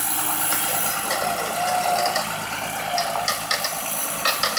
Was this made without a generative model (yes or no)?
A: yes